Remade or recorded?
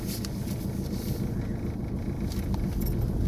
recorded